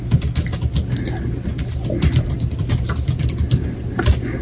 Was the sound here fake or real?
real